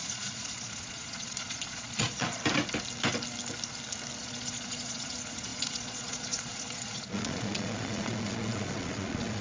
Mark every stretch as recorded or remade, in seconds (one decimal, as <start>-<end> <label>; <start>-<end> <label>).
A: 0.0-2.4 remade; 2.4-4.2 recorded; 4.2-9.4 remade